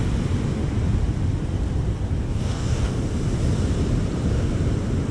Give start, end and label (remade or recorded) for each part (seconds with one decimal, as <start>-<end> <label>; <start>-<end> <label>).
0.0-2.3 recorded; 2.3-2.9 remade; 2.9-5.1 recorded